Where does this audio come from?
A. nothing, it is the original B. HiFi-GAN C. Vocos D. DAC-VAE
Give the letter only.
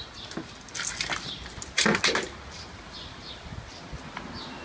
A